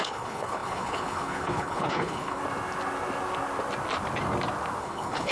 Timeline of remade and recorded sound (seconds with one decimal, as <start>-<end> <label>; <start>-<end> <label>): 0.0-2.4 remade; 2.4-4.8 recorded; 4.8-5.3 remade